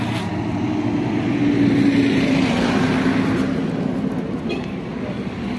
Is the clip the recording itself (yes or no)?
yes